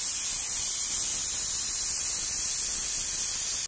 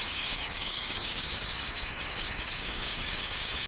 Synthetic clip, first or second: second